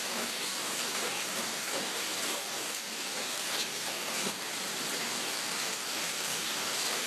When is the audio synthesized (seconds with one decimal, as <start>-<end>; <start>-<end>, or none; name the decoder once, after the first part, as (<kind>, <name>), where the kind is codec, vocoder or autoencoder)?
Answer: 0.0-4.5 (codec, DAC); 5.0-7.1